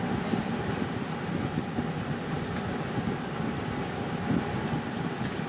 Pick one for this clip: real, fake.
real